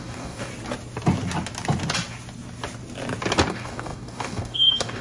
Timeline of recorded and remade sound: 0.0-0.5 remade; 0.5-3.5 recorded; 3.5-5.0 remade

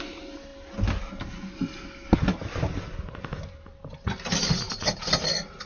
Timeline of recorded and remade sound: 0.0-5.7 recorded